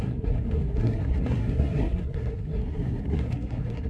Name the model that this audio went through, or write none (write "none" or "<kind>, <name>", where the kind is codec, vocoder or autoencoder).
codec, SNAC